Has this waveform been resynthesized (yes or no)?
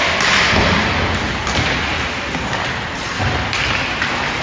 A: no